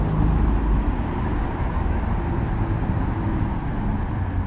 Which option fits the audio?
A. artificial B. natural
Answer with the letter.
B